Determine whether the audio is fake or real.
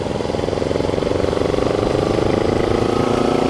real